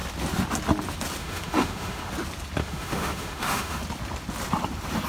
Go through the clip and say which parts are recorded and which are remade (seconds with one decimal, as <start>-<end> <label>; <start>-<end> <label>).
0.0-1.2 recorded; 1.2-2.1 remade; 2.1-2.6 recorded; 2.6-3.8 remade; 3.8-5.1 recorded